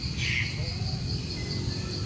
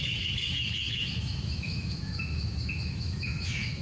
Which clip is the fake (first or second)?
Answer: second